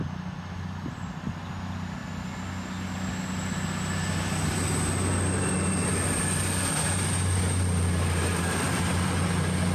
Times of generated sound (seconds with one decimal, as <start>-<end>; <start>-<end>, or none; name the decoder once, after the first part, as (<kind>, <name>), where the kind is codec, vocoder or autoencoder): none